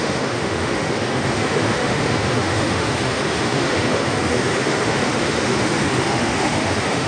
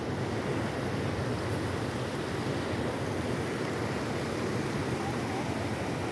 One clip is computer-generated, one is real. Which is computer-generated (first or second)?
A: first